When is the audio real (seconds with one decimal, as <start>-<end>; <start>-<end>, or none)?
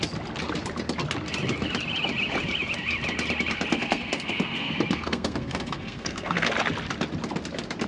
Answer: 0.0-3.7; 6.5-7.9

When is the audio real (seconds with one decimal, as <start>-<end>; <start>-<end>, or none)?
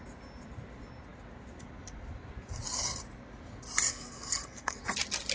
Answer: 0.0-3.9; 4.8-5.3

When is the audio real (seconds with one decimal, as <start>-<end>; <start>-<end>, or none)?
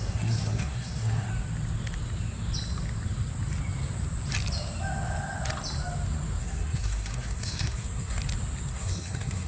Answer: 1.3-6.4; 8.2-8.7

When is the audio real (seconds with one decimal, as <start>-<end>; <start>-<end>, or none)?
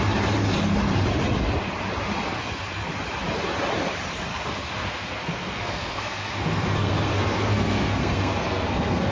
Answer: 0.0-4.3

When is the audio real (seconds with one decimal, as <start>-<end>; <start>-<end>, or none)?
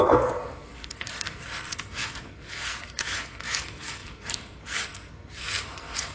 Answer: none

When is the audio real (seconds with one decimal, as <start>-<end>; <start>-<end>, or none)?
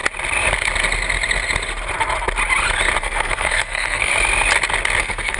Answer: 0.0-3.0; 4.1-5.0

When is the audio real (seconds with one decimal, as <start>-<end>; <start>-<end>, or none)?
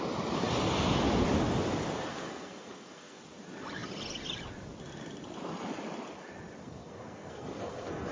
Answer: 0.0-2.1; 3.2-6.6